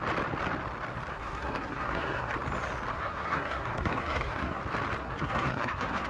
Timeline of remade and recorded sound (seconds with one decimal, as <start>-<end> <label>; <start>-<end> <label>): 0.0-1.1 recorded; 1.1-2.3 remade; 2.3-2.9 recorded; 2.9-4.6 remade; 4.6-5.0 recorded; 5.0-6.1 remade